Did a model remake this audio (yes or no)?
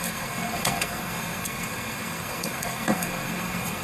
yes